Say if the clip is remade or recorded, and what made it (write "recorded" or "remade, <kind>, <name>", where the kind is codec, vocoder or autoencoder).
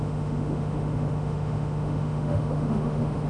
remade, autoencoder, DAC-VAE